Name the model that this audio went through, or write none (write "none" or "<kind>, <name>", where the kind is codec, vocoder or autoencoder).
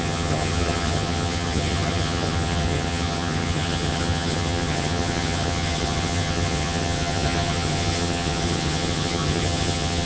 vocoder, HiFi-GAN